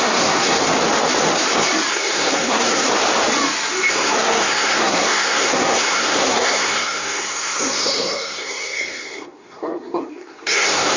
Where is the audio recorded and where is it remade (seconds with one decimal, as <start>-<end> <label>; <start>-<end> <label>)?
0.0-0.6 remade; 0.6-1.9 recorded; 1.9-2.9 remade; 2.9-3.9 recorded; 3.9-11.0 remade